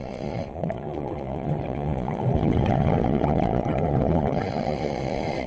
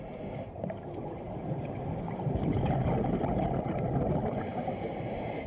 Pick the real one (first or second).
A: second